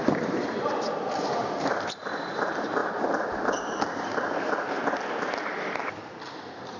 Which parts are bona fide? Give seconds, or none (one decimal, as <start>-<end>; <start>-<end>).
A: 0.0-6.8